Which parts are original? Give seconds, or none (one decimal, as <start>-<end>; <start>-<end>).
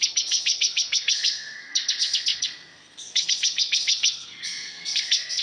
none